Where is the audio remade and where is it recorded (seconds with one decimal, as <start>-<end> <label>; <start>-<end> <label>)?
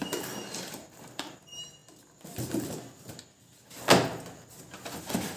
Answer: 0.0-1.4 remade; 1.4-5.4 recorded